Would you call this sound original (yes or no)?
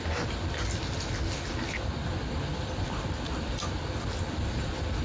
yes